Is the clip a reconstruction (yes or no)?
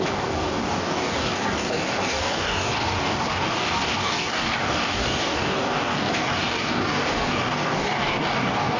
yes